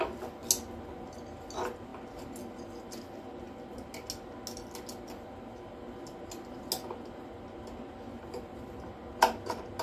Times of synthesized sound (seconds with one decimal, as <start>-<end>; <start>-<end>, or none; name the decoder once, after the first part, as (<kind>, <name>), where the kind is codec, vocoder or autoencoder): none